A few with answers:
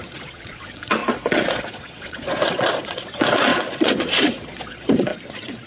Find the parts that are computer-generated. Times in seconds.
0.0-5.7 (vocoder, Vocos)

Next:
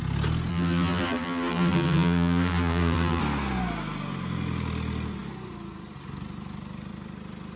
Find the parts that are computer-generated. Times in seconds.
0.5-3.2 (vocoder, BigVGAN v2)

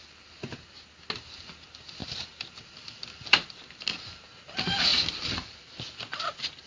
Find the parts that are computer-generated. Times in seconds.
2.0-4.4 (vocoder, BigVGAN v2)

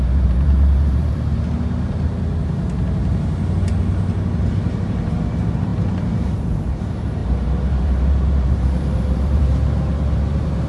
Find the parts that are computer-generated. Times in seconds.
0.0-1.3 (vocoder, BigVGAN v2); 4.5-10.7